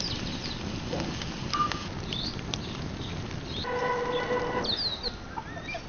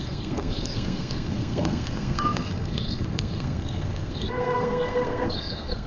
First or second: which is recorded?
first